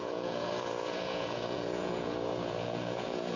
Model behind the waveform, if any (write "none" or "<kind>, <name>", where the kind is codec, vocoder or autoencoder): vocoder, Vocos